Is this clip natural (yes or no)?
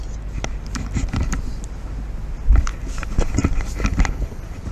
yes